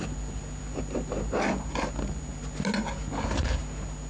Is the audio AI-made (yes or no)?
no